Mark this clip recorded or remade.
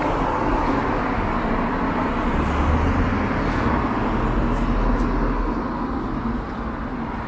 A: recorded